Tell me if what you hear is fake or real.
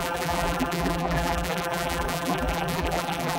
fake